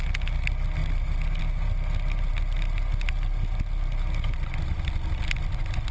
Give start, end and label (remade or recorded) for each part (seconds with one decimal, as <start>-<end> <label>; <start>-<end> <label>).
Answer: 0.0-5.9 recorded